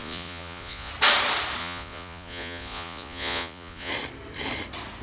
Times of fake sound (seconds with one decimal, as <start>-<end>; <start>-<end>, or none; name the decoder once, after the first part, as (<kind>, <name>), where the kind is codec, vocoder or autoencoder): 0.0-0.9 (vocoder, Vocos); 1.6-3.9